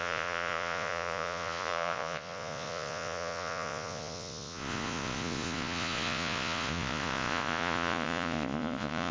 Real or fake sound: fake